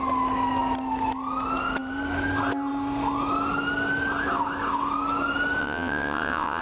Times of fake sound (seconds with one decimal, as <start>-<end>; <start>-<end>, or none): 5.6-6.6